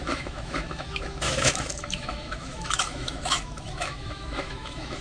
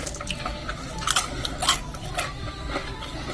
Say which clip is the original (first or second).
second